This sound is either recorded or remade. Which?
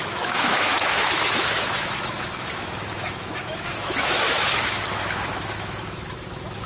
remade